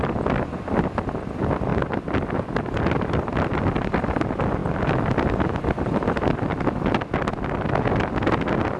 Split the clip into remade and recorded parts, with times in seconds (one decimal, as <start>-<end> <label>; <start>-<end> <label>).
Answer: 0.0-1.7 recorded; 1.7-3.5 remade; 3.5-8.8 recorded